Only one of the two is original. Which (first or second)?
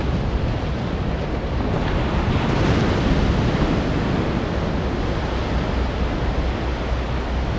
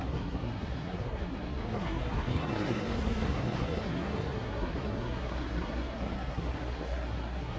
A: first